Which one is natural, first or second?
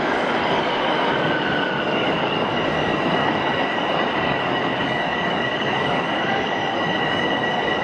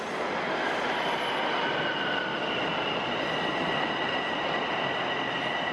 second